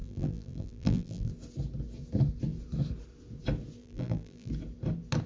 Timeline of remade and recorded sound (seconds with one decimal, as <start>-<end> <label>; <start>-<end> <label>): 0.0-1.3 remade; 1.3-3.8 recorded; 3.8-4.5 remade; 4.5-5.3 recorded